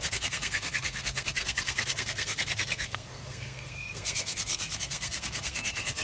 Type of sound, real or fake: fake